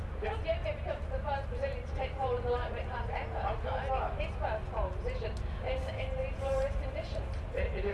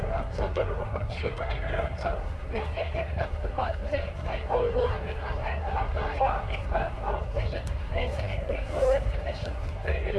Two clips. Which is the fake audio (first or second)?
second